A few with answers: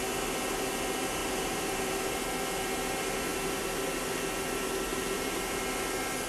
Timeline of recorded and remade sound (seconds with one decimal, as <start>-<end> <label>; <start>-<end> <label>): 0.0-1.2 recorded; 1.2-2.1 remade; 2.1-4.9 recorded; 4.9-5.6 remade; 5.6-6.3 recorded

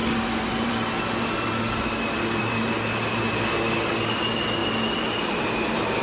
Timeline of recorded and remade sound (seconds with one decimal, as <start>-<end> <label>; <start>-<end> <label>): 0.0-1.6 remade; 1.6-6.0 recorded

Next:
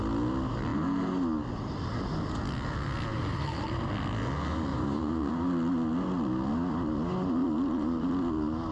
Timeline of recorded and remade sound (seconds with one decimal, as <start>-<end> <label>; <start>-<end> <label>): 0.0-3.1 recorded; 3.1-3.9 remade; 3.9-4.7 recorded; 4.7-5.3 remade; 5.3-7.4 recorded; 7.4-8.1 remade; 8.1-8.7 recorded

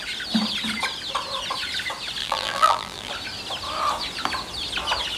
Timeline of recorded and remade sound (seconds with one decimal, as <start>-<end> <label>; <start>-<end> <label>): 0.0-2.2 recorded; 2.2-3.1 remade; 3.1-5.2 recorded

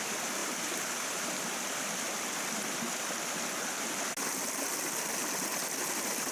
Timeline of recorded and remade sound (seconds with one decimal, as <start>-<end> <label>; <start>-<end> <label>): 0.0-0.4 recorded; 0.4-1.3 remade; 1.3-6.3 recorded